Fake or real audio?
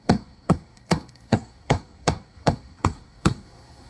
fake